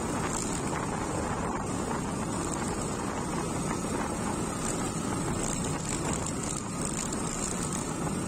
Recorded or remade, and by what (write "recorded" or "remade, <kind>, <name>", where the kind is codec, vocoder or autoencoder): recorded